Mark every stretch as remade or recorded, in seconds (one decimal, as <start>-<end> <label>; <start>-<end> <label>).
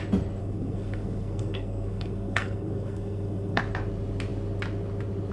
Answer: 0.0-0.4 recorded; 0.4-3.6 remade; 3.6-5.3 recorded